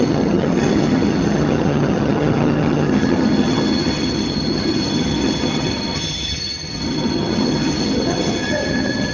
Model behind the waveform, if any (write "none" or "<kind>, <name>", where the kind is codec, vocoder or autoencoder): vocoder, HiFi-GAN